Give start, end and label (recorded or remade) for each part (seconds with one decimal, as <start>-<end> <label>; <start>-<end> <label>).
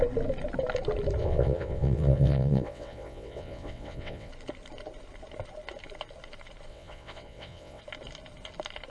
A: 0.0-1.2 recorded; 1.2-4.3 remade; 4.3-6.7 recorded; 6.7-7.8 remade; 7.8-8.9 recorded